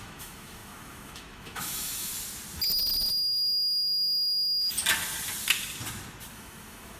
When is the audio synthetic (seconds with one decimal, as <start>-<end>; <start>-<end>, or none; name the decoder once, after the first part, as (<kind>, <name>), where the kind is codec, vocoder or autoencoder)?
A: 0.0-2.1 (autoencoder, DAC-VAE); 6.3-7.0